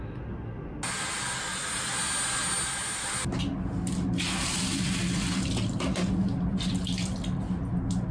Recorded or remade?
recorded